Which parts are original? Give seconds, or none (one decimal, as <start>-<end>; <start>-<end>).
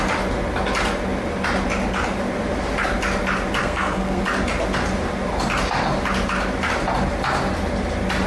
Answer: 0.0-3.6; 4.2-8.3